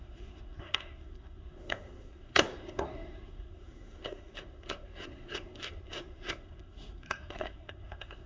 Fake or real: fake